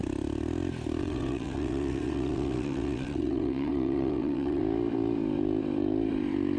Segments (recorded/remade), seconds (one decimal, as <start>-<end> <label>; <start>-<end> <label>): 0.0-1.0 recorded; 1.0-4.6 remade; 4.6-6.6 recorded